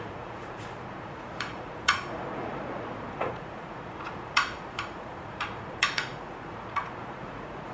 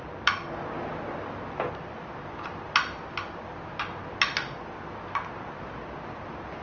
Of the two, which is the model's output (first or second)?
first